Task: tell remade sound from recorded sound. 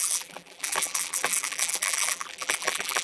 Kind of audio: remade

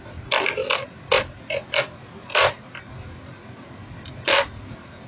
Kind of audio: recorded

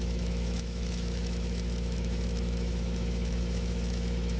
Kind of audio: remade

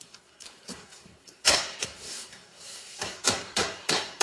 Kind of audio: remade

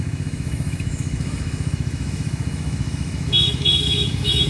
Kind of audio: remade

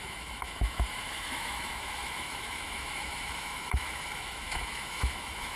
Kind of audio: remade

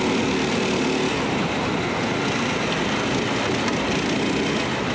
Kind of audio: recorded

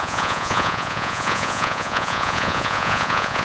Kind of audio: remade